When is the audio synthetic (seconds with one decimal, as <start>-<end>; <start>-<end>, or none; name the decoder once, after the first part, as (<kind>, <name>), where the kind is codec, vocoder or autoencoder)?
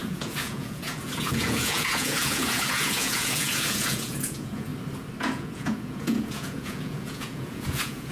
0.0-4.7 (vocoder, Vocos); 5.2-8.1